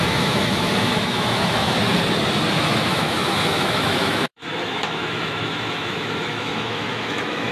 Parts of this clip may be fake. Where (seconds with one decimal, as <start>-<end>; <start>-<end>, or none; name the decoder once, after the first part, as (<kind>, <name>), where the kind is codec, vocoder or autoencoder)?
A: 0.0-1.8 (autoencoder, DAC-VAE); 2.6-7.5